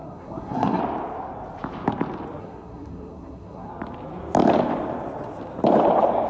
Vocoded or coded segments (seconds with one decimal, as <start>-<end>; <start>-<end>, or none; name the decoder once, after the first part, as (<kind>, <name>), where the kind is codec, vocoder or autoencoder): 0.0-0.8 (codec, SNAC); 2.4-3.7